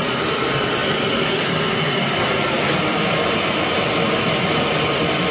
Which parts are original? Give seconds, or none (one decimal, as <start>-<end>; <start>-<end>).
0.0-5.3